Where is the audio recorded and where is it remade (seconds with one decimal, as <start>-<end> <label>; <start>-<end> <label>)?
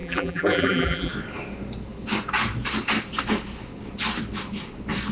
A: 0.0-1.1 remade; 1.1-5.1 recorded